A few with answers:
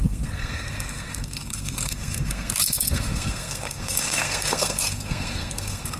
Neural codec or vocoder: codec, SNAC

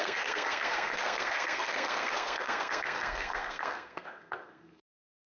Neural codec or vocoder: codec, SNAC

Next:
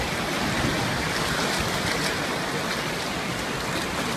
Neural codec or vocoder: none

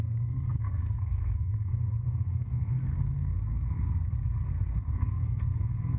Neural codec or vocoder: codec, SNAC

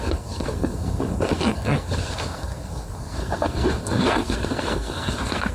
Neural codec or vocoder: codec, SNAC